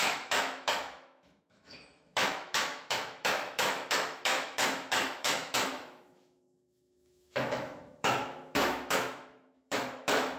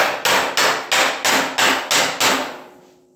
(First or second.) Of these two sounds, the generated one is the first